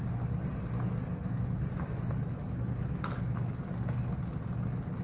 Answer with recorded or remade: recorded